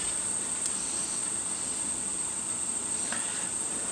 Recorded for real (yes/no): yes